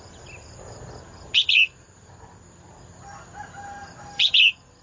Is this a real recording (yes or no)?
yes